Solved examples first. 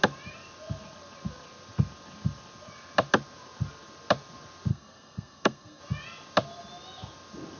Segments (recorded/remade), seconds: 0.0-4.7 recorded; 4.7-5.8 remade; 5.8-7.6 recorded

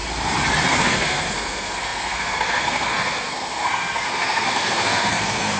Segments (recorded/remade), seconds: 0.0-0.8 recorded; 0.8-5.6 remade

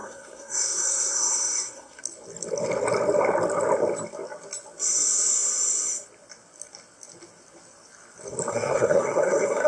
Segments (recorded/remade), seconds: 0.0-2.0 remade; 2.0-8.5 recorded; 8.5-9.7 remade

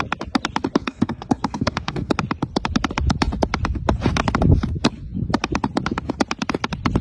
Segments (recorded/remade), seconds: 0.0-0.8 recorded; 0.8-2.1 remade; 2.1-7.0 recorded

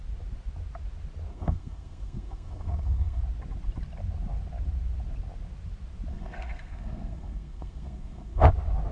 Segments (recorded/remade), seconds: 0.0-1.3 recorded; 1.3-3.2 remade; 3.2-6.1 recorded; 6.1-8.5 remade; 8.5-8.9 recorded